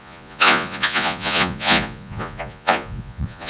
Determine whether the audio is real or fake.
fake